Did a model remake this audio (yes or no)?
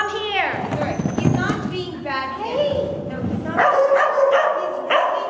no